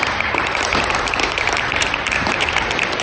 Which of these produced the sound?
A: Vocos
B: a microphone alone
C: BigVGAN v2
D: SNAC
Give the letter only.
C